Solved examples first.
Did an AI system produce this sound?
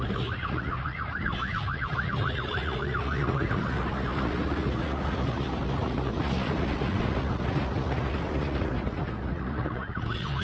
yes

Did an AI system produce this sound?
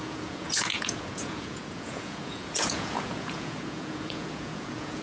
yes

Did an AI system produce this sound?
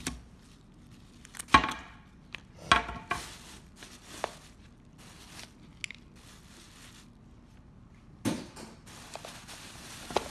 no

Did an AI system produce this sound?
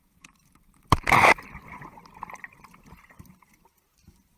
yes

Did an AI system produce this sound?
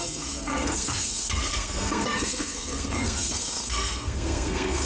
yes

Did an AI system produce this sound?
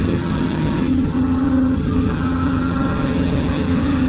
yes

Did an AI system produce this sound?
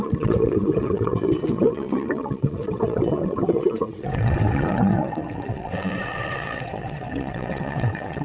yes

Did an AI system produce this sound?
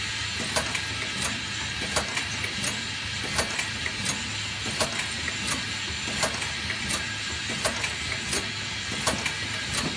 no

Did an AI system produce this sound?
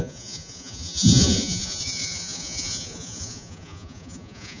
yes